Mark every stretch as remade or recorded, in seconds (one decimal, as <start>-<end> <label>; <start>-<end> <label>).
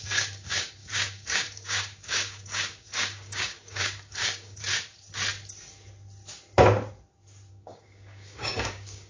0.0-4.6 remade; 4.6-7.5 recorded; 7.5-9.1 remade